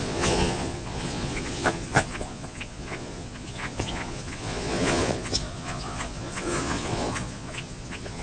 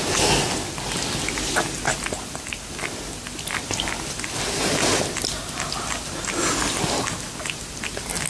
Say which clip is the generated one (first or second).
first